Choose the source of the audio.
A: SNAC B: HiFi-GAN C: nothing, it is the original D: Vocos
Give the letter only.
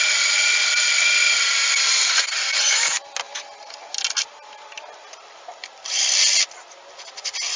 C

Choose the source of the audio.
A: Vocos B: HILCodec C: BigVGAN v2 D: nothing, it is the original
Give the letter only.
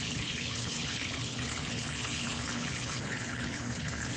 B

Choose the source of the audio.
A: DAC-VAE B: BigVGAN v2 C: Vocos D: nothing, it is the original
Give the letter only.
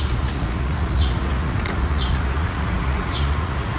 C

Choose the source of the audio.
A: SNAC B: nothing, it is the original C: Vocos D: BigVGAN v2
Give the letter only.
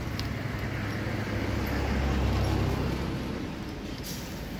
B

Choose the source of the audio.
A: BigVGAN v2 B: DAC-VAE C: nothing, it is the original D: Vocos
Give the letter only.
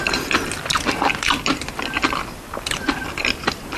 C